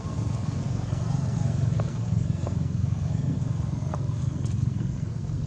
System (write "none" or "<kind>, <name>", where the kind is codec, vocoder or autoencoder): codec, SNAC